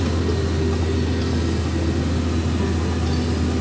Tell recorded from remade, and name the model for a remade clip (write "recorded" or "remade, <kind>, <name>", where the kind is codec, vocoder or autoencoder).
recorded